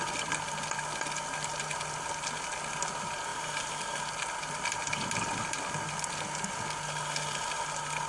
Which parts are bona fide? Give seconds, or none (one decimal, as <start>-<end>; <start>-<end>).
0.0-8.1